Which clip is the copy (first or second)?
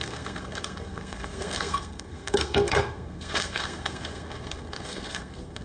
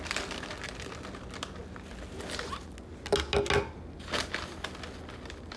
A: first